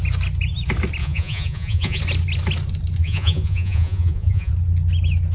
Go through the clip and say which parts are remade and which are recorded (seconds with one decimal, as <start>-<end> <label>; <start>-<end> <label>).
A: 0.0-1.0 recorded; 1.0-2.0 remade; 2.0-3.0 recorded; 3.0-4.5 remade; 4.5-5.3 recorded